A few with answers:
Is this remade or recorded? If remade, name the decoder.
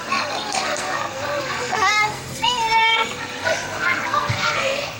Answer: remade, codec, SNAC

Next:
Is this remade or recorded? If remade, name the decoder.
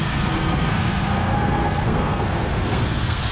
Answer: remade, codec, SNAC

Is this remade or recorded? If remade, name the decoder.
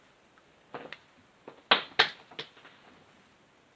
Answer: recorded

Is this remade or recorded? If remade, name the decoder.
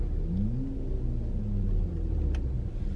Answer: recorded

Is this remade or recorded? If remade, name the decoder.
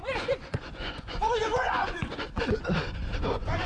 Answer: remade, vocoder, Vocos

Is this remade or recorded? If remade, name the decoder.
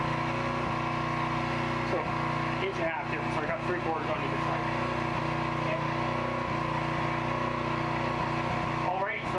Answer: recorded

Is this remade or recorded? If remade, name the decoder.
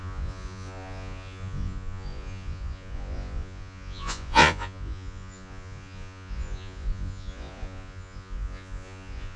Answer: remade, vocoder, Vocos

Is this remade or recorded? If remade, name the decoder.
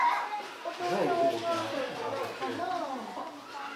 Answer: recorded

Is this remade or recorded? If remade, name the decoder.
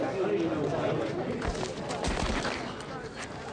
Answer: recorded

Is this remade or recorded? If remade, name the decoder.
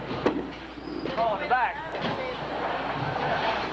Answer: recorded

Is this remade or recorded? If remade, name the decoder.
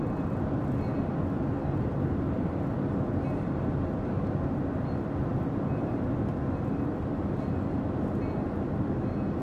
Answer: recorded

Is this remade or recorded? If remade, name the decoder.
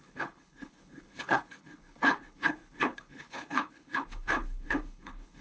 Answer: remade, codec, HILCodec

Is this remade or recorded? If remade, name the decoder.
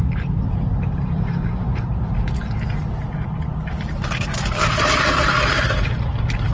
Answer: remade, vocoder, BigVGAN v2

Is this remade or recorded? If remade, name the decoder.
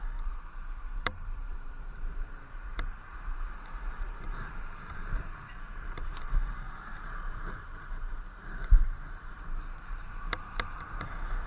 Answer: remade, vocoder, BigVGAN v2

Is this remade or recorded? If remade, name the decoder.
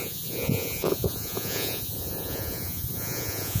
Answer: remade, vocoder, Vocos